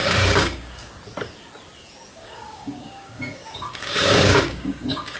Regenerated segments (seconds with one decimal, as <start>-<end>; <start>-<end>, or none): 0.0-0.9; 2.1-5.2